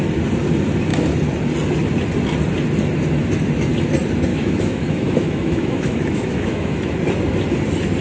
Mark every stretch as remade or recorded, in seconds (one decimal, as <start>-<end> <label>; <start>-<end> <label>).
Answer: 0.0-4.3 recorded; 4.3-6.8 remade; 6.8-8.0 recorded